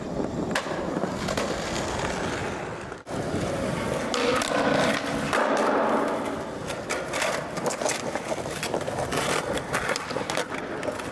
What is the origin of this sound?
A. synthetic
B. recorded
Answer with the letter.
B